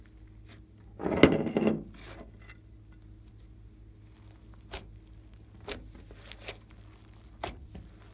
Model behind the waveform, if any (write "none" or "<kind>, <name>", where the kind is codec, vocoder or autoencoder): none